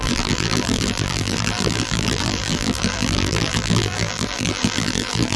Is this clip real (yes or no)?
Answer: no